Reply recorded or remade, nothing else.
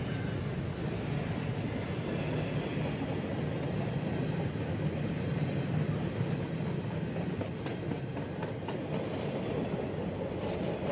recorded